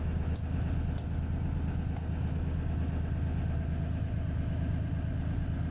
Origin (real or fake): real